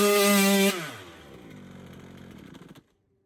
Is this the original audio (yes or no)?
yes